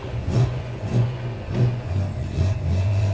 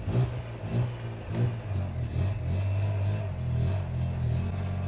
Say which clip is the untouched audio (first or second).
second